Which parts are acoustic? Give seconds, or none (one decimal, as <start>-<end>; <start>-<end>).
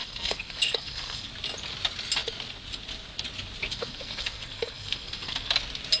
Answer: 1.3-3.7; 5.5-6.0